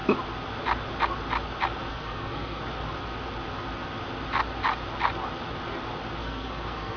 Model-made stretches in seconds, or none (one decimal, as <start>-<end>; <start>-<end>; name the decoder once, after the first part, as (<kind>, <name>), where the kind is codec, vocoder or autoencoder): 1.9-2.6 (codec, SNAC); 6.2-7.0